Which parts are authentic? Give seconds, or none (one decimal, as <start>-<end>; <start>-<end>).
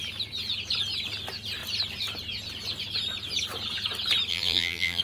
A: 0.0-4.3